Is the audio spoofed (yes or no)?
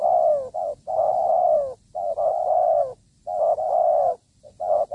no